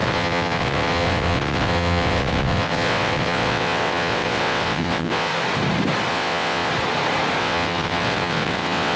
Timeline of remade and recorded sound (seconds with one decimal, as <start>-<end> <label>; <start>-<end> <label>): 0.0-5.3 remade; 5.3-6.1 recorded; 6.1-6.7 remade; 6.7-7.4 recorded; 7.4-9.0 remade

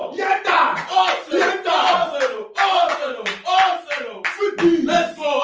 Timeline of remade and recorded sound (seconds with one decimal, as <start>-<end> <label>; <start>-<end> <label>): 0.0-1.5 remade; 1.5-5.4 recorded

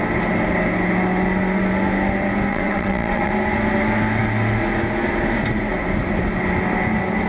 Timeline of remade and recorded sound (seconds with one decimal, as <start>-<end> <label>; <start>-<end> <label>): 0.0-2.5 recorded; 2.5-3.3 remade; 3.3-7.3 recorded

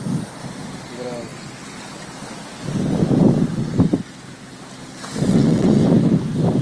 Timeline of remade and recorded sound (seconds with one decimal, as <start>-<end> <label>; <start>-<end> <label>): 0.0-5.3 recorded; 5.3-5.8 remade; 5.8-6.6 recorded

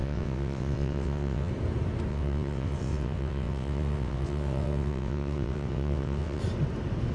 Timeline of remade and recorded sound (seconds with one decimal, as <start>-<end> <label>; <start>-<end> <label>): 0.0-1.5 remade; 1.5-2.1 recorded; 2.1-6.4 remade; 6.4-7.1 recorded

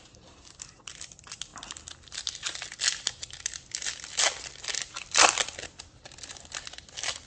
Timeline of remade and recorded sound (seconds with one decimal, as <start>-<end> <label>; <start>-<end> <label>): 0.0-7.3 recorded

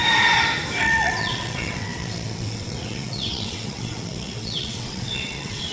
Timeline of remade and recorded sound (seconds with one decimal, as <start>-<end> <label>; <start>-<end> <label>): 0.0-0.8 recorded; 0.8-5.7 remade